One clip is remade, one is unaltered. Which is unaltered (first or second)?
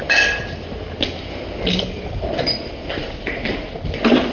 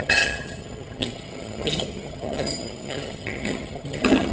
first